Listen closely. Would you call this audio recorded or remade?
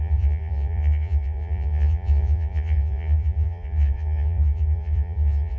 remade